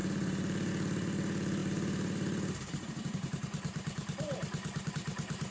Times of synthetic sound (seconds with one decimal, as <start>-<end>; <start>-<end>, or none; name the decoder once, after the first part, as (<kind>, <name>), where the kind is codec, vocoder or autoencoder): 0.0-0.7 (vocoder, BigVGAN v2); 1.6-4.9

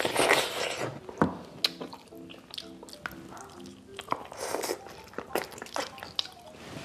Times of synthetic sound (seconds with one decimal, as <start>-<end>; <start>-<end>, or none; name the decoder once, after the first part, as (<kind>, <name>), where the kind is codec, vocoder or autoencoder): none

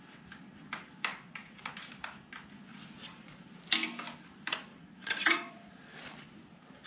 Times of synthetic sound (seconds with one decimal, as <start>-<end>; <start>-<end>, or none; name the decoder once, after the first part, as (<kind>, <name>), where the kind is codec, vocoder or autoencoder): 1.1-1.7 (vocoder, Vocos); 2.7-3.4; 4.7-5.7